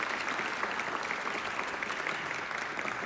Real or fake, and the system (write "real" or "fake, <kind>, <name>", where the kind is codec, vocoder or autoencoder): real